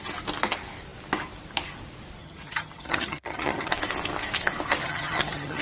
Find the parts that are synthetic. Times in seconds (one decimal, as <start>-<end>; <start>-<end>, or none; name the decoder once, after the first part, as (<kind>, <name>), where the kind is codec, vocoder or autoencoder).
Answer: 2.2-3.7 (vocoder, HiFi-GAN); 4.8-5.6